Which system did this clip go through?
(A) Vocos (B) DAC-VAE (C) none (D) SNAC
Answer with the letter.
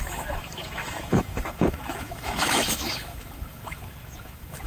B